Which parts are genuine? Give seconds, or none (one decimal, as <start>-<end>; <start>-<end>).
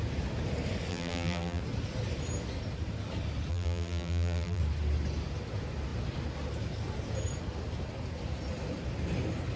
0.0-0.9; 1.6-3.5; 4.6-9.6